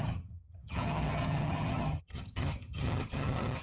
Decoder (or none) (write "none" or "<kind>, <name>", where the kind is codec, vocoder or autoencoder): vocoder, HiFi-GAN